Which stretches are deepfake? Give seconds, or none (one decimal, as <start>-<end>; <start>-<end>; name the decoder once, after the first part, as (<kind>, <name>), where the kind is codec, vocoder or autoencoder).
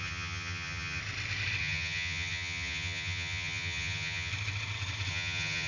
0.0-1.0 (vocoder, HiFi-GAN); 1.6-4.3; 5.1-5.7